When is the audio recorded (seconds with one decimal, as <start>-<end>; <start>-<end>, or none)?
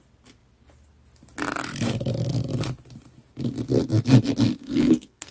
0.0-4.6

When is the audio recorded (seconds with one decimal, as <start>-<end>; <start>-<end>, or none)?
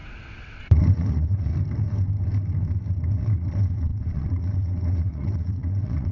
1.5-3.1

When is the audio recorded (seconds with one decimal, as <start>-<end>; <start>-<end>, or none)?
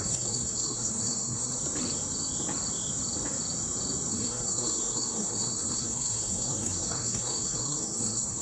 1.6-4.1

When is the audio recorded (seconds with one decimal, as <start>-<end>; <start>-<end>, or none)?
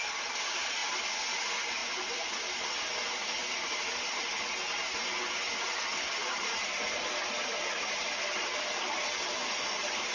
0.0-10.1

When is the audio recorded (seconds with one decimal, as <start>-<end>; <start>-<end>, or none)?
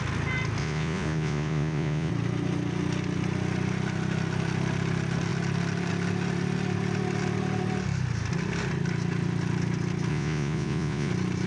0.0-0.6; 2.1-10.1; 11.1-11.5